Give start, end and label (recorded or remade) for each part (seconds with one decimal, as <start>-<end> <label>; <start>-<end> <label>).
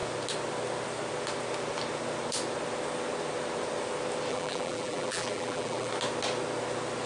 0.0-4.3 recorded; 4.3-5.9 remade; 5.9-7.1 recorded